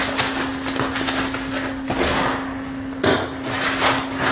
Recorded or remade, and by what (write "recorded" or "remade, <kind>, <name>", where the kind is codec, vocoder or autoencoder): recorded